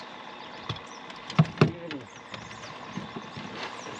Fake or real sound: real